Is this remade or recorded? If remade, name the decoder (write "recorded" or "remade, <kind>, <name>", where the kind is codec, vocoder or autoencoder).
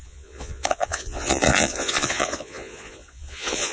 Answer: remade, vocoder, Vocos